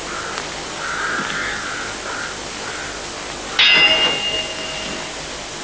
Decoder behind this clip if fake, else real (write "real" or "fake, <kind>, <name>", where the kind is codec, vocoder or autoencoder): real